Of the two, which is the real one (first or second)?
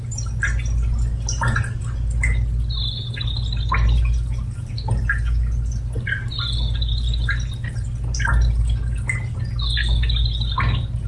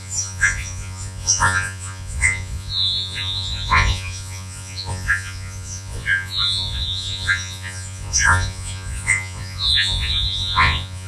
first